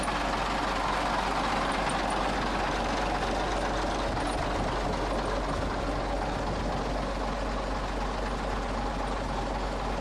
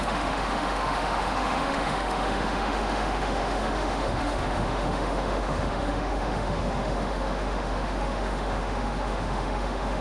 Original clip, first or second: first